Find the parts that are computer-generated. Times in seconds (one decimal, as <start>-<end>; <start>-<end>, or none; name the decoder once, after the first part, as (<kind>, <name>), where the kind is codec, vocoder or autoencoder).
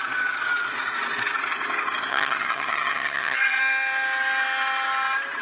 2.1-3.6 (vocoder, HiFi-GAN)